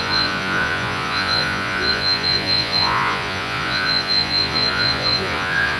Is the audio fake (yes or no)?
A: yes